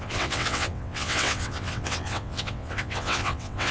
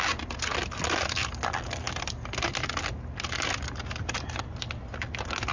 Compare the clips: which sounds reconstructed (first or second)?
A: first